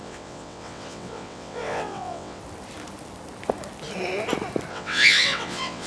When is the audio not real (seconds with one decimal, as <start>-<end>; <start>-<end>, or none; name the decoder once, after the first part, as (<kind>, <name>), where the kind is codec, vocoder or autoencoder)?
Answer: 0.0-2.4 (vocoder, WaveNeXt); 4.7-5.9